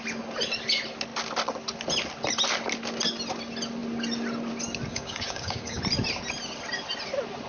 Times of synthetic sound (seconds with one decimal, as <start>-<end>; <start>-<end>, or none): 4.9-5.8